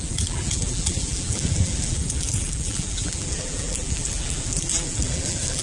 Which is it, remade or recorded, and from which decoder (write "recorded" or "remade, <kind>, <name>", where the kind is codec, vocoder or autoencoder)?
remade, vocoder, BigVGAN v2